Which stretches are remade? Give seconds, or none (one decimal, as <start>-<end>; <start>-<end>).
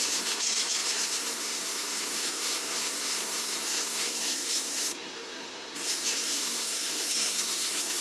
0.0-8.0